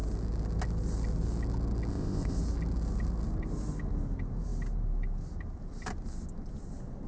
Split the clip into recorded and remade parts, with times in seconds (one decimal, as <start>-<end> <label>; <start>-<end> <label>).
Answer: 0.0-1.9 recorded; 1.9-2.4 remade; 2.4-7.1 recorded